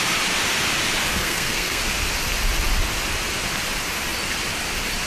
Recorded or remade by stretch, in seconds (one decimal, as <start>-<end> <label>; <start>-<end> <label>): 0.0-1.1 recorded; 1.1-1.8 remade; 1.8-5.1 recorded